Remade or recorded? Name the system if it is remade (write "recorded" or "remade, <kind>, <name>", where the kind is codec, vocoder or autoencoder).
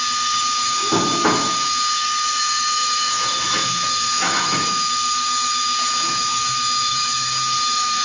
remade, autoencoder, DAC-VAE